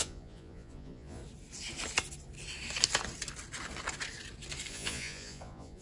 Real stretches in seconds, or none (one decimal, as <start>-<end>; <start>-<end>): 1.2-4.7